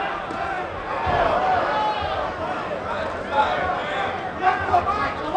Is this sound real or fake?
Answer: real